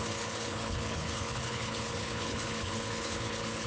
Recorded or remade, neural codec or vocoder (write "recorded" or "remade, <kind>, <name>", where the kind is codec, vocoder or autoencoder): remade, codec, HILCodec